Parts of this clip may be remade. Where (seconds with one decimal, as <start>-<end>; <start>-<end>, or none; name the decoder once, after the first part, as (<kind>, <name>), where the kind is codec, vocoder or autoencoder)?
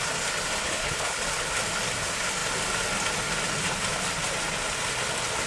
0.6-1.2 (codec, HILCodec)